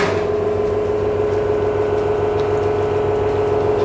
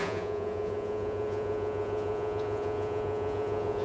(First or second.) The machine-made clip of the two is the second